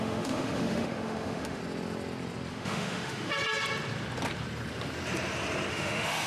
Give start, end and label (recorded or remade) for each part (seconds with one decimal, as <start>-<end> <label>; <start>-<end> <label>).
0.0-1.6 remade; 1.6-2.5 recorded; 2.5-3.3 remade; 3.3-5.7 recorded; 5.7-6.3 remade